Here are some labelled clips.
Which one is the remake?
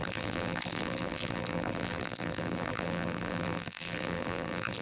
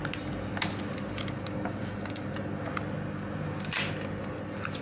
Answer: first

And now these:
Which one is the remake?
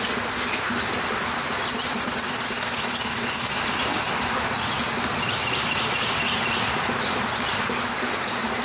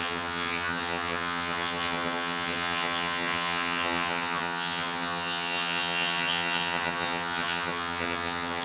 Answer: second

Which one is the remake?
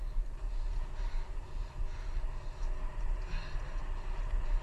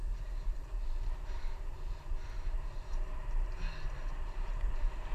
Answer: second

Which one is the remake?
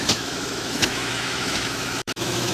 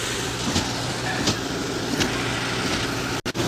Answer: first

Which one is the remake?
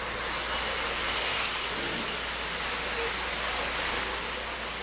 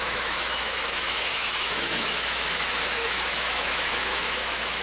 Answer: second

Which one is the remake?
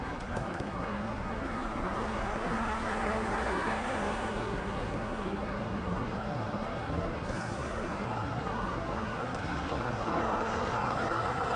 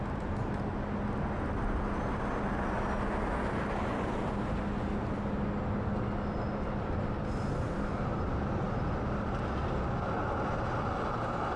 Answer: first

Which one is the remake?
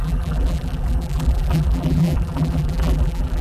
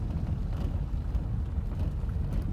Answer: first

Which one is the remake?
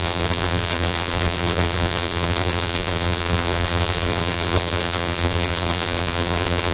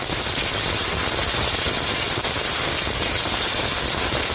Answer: first